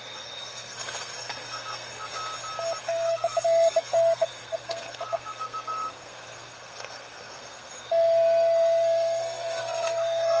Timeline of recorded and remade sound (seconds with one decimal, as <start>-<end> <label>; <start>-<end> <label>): 0.0-2.1 remade; 2.1-2.8 recorded; 2.8-10.4 remade